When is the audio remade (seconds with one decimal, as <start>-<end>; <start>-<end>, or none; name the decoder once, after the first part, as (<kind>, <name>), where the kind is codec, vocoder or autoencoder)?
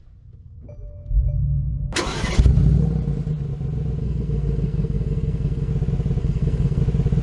4.0-5.7 (codec, SNAC); 6.2-6.8